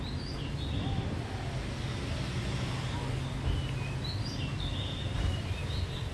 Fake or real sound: real